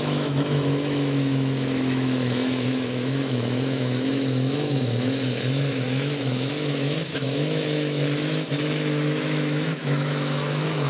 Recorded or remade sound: remade